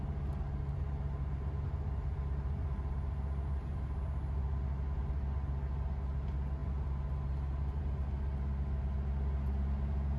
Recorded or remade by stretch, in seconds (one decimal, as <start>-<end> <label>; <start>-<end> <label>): 0.0-10.2 recorded